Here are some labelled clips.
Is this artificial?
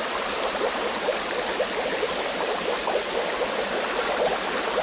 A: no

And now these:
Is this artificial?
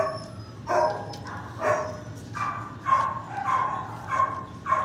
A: no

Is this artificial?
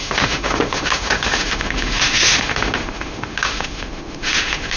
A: yes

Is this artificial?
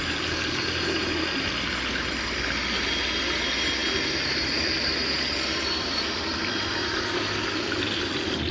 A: no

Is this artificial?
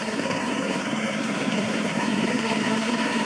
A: yes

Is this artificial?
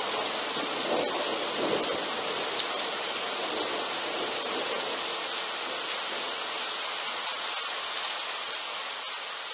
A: no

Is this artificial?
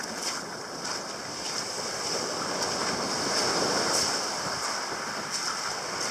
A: no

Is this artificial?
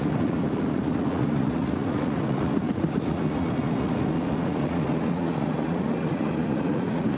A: yes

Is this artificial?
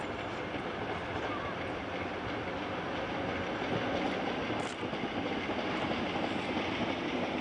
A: no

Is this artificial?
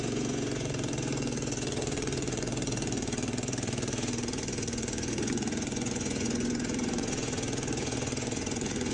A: yes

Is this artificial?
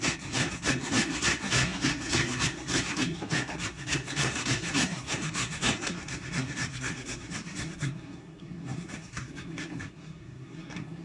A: yes